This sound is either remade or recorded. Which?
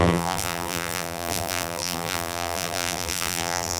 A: remade